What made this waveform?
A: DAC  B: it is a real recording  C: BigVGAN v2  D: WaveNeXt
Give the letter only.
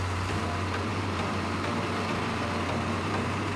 C